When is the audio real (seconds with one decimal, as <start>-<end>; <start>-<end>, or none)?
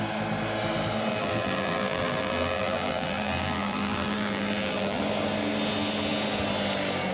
0.0-1.1; 5.0-7.1